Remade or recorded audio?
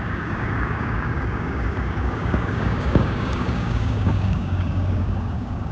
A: remade